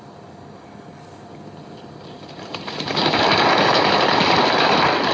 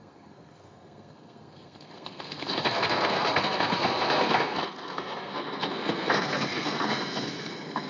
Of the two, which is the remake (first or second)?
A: second